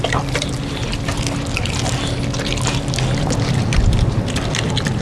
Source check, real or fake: real